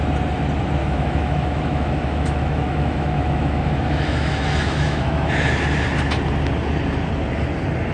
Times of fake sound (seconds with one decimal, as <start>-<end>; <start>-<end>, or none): 0.8-5.3